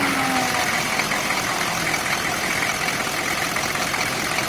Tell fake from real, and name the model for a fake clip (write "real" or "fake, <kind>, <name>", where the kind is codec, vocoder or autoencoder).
real